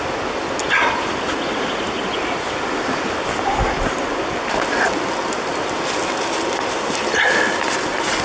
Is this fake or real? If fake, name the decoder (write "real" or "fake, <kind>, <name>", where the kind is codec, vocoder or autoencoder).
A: real